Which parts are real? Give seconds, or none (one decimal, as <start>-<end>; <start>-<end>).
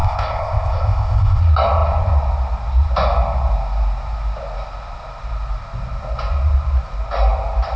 1.4-7.8